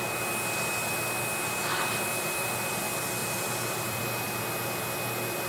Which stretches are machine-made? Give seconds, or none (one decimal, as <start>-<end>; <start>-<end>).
1.6-2.8; 3.2-4.0